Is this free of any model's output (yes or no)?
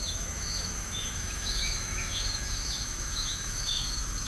no